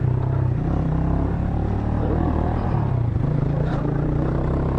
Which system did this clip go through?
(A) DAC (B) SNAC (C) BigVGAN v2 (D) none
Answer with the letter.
C